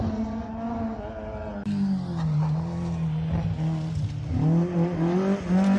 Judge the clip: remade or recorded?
recorded